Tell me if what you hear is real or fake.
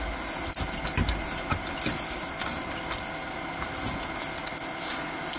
real